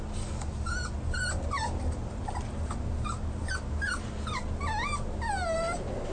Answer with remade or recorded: recorded